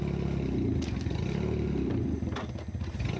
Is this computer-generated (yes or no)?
no